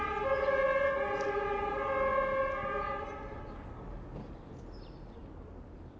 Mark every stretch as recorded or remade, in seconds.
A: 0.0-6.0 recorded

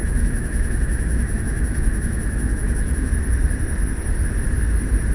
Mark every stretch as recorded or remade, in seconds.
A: 0.0-3.1 remade; 3.1-5.1 recorded

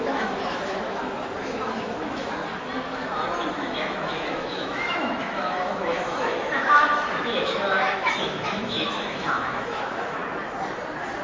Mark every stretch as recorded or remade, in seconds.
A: 0.0-2.4 remade; 2.4-3.5 recorded; 3.5-10.2 remade; 10.2-11.2 recorded

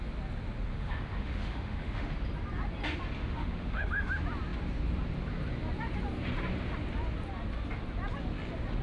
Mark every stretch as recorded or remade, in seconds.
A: 0.0-0.7 recorded; 0.7-2.1 remade; 2.1-3.2 recorded; 3.2-4.1 remade; 4.1-8.8 recorded